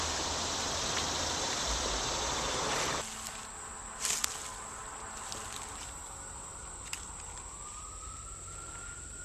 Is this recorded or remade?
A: recorded